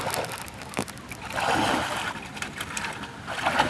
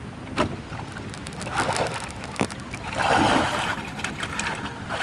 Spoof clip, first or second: second